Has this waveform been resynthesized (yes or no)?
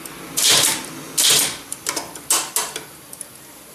no